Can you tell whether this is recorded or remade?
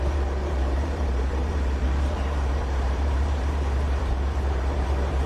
remade